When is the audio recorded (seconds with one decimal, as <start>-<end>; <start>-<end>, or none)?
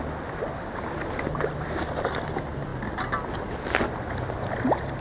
0.0-5.0